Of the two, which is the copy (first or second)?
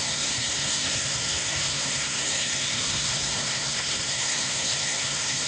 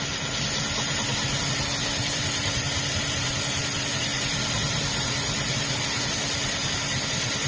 first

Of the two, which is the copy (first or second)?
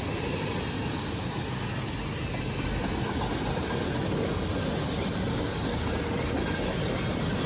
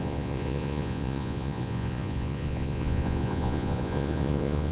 second